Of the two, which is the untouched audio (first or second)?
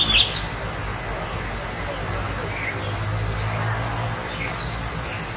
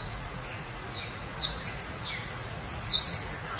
first